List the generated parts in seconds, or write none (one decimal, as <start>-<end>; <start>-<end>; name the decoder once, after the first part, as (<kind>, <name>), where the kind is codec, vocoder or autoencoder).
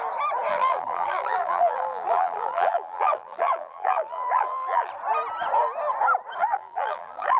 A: 0.5-4.9 (vocoder, BigVGAN v2); 6.4-7.4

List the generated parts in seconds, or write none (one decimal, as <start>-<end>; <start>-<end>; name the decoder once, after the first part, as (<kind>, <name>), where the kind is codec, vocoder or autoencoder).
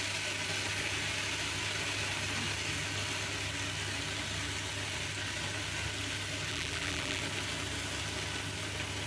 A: 6.5-7.2 (vocoder, BigVGAN v2)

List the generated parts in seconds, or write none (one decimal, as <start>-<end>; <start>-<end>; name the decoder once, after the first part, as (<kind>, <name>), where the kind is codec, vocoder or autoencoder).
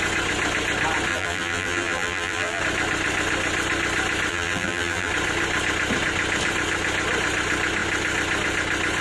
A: 1.1-2.6 (vocoder, BigVGAN v2); 4.3-5.1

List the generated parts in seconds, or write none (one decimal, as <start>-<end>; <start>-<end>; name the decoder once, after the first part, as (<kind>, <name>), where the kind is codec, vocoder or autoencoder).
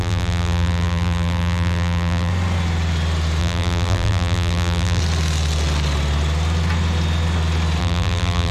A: 0.0-2.3 (vocoder, BigVGAN v2); 3.4-5.0; 7.8-8.5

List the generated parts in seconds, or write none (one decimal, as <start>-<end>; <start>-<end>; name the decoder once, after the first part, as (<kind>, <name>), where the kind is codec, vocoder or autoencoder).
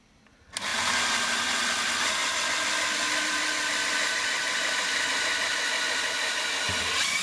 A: 0.7-1.3 (vocoder, BigVGAN v2); 2.2-6.4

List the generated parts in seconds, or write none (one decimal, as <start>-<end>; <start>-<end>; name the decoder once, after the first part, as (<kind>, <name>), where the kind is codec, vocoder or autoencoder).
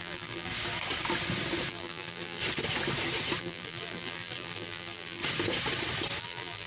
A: 0.0-0.5 (vocoder, BigVGAN v2); 1.7-2.4; 3.4-5.2; 6.2-6.7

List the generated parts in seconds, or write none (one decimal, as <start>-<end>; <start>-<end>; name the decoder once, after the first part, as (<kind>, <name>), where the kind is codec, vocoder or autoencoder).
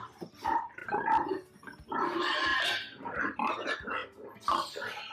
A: 0.0-0.8 (vocoder, BigVGAN v2); 1.3-4.0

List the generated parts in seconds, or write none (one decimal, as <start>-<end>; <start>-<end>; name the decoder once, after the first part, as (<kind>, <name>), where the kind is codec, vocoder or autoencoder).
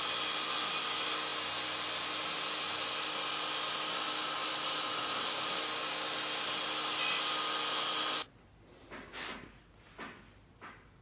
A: 1.3-2.1 (vocoder, BigVGAN v2); 4.4-5.7